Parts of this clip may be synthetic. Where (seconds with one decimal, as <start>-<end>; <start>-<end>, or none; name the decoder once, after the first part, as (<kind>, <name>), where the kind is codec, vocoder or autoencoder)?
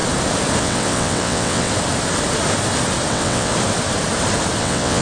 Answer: 0.6-1.7 (vocoder, WaveNeXt); 3.1-3.5; 4.6-5.0